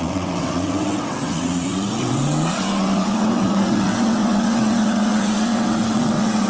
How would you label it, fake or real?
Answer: fake